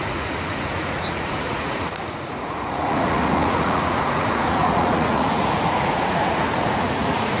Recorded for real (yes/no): no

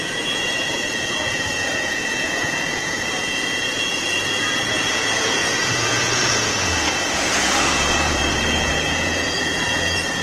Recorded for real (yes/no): no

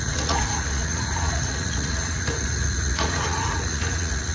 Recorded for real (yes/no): no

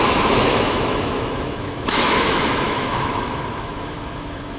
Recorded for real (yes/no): no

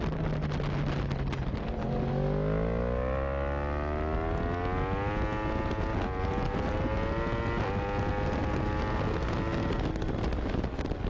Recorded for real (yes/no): yes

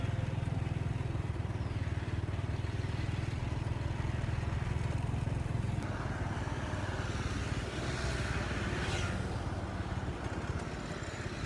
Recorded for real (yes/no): yes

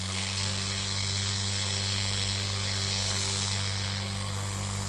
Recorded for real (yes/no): no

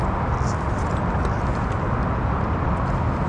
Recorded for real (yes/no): yes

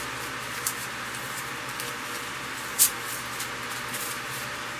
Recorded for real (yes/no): yes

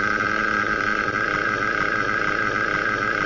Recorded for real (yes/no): yes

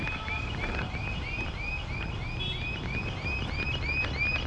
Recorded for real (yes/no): yes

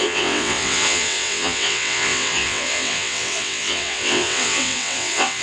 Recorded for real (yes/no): no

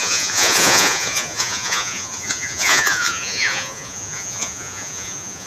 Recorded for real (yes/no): no